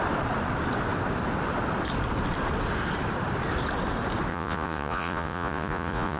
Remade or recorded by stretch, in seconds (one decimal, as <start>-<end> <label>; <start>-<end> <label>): 0.0-4.3 recorded; 4.3-6.2 remade